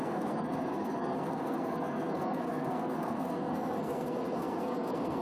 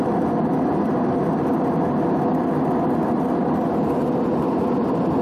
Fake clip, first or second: first